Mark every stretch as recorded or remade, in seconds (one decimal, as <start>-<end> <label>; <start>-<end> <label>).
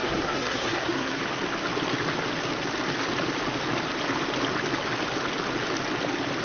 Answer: 0.0-1.2 remade; 1.2-6.4 recorded